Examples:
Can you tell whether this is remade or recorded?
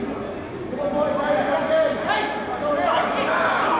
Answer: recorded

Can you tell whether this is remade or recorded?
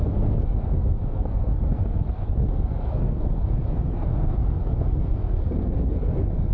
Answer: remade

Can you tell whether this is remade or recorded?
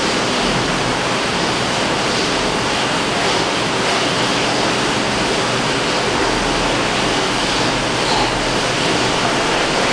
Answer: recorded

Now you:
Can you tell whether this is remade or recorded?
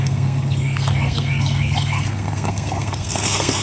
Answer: remade